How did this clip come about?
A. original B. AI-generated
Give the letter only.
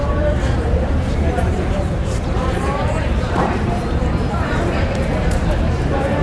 B